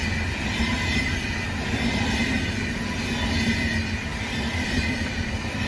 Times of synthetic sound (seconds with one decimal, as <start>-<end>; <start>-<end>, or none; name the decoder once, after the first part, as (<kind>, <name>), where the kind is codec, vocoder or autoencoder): 0.0-1.3 (vocoder, BigVGAN v2); 4.1-5.7